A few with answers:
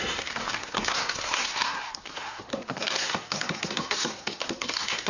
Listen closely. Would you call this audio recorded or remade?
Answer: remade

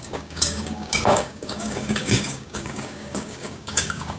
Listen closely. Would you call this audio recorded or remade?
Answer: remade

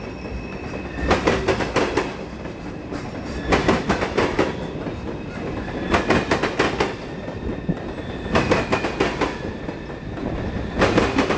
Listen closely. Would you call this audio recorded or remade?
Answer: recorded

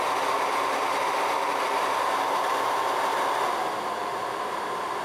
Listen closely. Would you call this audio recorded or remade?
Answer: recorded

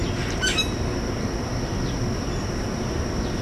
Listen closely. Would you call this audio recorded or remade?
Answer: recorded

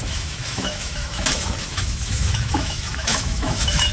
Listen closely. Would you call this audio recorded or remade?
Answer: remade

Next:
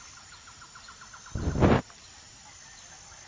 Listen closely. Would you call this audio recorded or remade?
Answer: remade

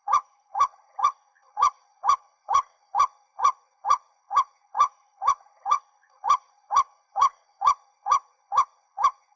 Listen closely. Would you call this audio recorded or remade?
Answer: remade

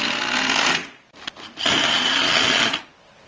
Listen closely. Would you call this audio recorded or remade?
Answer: recorded